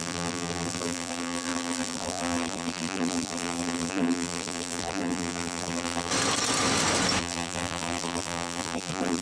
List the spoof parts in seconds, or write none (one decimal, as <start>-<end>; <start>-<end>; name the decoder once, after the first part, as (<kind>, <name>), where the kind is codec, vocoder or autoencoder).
0.0-6.1 (vocoder, BigVGAN v2); 7.2-9.2

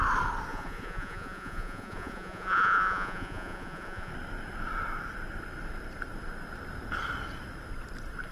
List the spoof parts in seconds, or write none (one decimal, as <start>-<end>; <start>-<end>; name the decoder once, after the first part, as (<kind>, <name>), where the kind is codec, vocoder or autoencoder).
0.5-4.1 (vocoder, Vocos)

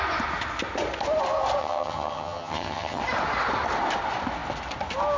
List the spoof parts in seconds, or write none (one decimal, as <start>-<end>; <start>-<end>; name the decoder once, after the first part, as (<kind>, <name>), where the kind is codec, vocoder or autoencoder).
1.6-3.0 (vocoder, HiFi-GAN)

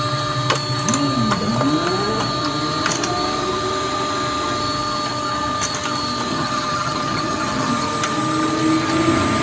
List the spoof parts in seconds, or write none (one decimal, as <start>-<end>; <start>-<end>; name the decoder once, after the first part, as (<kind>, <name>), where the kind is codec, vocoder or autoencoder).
6.3-7.7 (vocoder, HiFi-GAN)